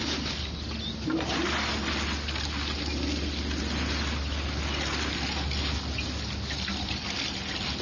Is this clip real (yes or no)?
yes